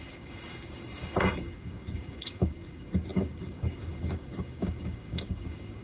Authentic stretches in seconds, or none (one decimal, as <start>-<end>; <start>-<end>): none

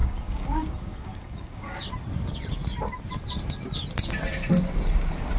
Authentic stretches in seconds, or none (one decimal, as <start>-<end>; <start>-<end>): 1.9-5.4